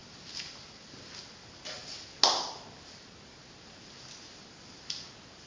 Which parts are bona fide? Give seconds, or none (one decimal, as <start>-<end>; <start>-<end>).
0.0-5.5